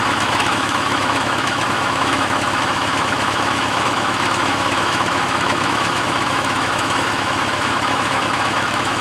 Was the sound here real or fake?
fake